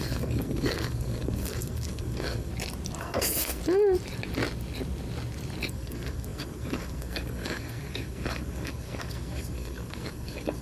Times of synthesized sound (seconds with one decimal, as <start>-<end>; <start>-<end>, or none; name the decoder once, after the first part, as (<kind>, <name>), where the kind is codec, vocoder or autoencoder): 0.0-2.5 (codec, SNAC); 3.0-3.6; 5.7-10.6